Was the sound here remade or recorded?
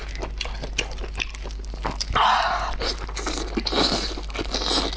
recorded